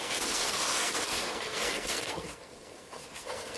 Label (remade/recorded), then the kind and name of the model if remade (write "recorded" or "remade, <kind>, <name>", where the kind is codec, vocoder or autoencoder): remade, codec, SNAC